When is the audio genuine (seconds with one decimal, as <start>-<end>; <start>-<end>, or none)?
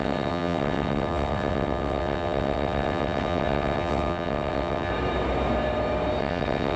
4.9-6.2